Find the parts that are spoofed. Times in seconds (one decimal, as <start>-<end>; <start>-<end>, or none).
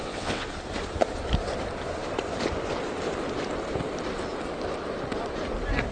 0.0-0.5